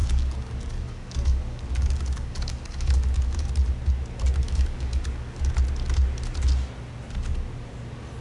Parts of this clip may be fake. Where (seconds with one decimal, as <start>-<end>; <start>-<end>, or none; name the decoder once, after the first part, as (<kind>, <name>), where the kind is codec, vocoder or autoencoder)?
0.0-3.5 (codec, DAC); 4.4-5.5